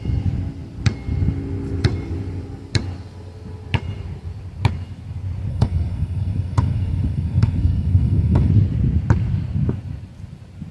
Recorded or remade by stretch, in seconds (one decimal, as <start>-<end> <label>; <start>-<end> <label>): 0.0-5.5 recorded; 5.5-8.5 remade; 8.5-10.7 recorded